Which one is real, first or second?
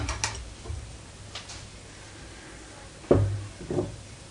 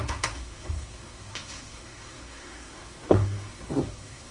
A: first